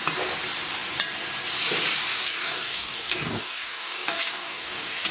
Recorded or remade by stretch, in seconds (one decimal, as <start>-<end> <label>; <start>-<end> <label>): 0.0-2.1 recorded; 2.1-5.1 remade